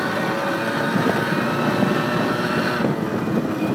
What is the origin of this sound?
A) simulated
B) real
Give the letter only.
B